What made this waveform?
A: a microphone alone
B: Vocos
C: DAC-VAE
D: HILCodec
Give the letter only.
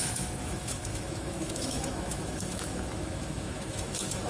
C